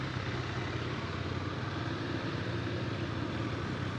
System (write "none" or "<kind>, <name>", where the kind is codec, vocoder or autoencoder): none